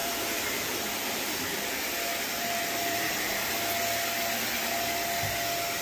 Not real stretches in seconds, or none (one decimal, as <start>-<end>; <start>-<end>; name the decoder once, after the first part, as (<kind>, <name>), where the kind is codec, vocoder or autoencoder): 0.0-1.7 (vocoder, BigVGAN v2); 2.1-3.5

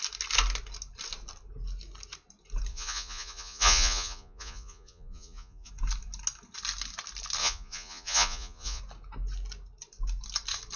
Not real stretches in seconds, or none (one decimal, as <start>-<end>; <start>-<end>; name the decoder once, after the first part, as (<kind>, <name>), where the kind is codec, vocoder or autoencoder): 2.7-5.7 (vocoder, Vocos); 7.4-8.8

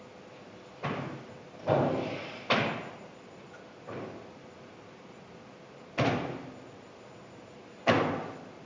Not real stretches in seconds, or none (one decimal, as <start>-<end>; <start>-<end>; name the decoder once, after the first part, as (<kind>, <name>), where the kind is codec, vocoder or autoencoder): none

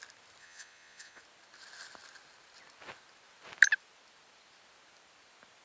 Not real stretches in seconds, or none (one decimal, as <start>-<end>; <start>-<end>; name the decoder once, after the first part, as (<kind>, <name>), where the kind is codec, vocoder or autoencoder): 0.4-1.2 (vocoder, Vocos)

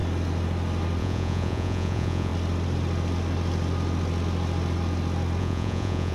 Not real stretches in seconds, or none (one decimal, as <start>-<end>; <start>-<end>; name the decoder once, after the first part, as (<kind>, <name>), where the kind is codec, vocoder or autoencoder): 1.0-2.3 (vocoder, Vocos); 5.4-6.1